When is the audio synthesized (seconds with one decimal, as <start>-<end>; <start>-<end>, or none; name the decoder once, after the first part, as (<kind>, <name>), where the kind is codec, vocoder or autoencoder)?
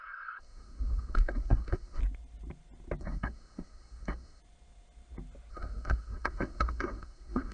0.0-2.0 (codec, SNAC); 3.0-4.4; 5.5-7.5